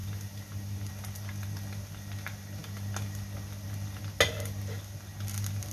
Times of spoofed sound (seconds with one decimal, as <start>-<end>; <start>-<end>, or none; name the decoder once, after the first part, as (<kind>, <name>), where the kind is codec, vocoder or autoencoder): none